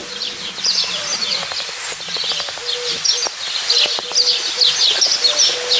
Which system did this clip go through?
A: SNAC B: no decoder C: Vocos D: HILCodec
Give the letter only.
B